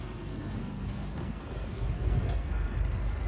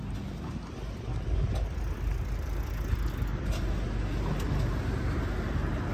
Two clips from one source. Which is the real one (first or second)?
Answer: second